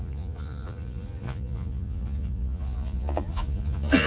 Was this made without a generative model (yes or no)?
no